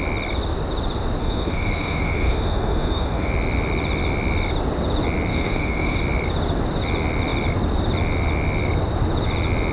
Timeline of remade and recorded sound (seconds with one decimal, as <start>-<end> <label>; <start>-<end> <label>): 0.0-1.2 recorded; 1.2-3.3 remade; 3.3-5.3 recorded; 5.3-6.0 remade; 6.0-9.7 recorded